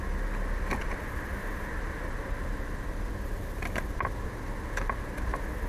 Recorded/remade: recorded